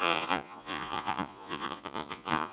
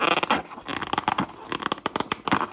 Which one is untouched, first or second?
second